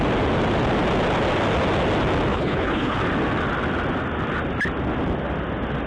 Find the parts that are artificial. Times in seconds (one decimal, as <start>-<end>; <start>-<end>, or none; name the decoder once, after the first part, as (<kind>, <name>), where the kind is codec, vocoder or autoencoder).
2.3-3.0 (codec, HILCodec)